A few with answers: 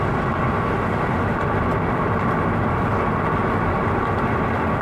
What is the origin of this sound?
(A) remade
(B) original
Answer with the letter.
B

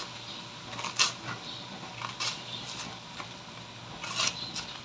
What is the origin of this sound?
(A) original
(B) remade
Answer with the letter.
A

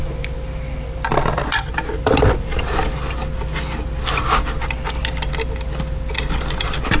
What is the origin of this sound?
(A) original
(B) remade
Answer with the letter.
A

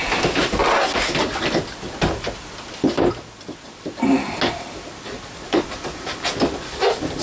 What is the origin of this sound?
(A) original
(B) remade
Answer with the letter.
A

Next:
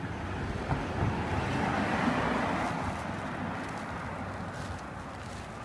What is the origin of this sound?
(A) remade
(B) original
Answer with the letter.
B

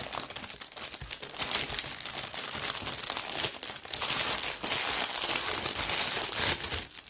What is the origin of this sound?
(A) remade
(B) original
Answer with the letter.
B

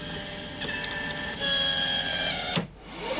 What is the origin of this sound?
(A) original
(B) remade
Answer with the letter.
A